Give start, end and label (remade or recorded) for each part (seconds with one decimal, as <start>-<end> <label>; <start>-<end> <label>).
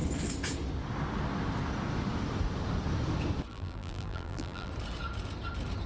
0.0-3.5 recorded; 3.5-4.7 remade; 4.7-5.9 recorded